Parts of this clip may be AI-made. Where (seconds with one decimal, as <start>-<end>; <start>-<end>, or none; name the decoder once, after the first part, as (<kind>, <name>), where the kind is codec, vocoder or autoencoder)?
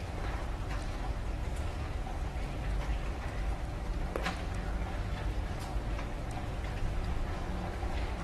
0.0-1.4 (vocoder, BigVGAN v2); 5.3-6.4